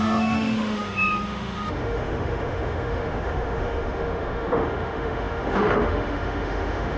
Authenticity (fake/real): fake